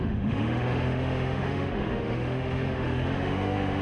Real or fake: fake